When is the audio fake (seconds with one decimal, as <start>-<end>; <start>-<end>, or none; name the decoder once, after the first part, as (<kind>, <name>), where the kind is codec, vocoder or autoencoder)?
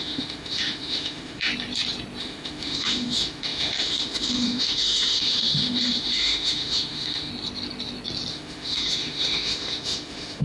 0.0-1.5 (autoencoder, DAC-VAE); 2.2-7.3; 8.3-10.4